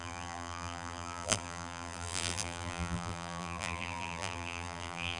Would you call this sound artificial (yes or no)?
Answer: yes